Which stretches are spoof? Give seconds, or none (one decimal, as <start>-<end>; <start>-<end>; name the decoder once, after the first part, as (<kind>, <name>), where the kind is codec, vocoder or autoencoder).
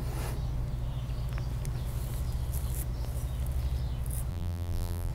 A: 4.3-5.1 (vocoder, BigVGAN v2)